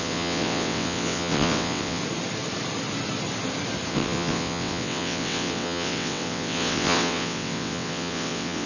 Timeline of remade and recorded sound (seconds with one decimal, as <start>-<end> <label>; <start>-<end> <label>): 0.0-2.0 remade; 2.0-3.9 recorded; 3.9-8.7 remade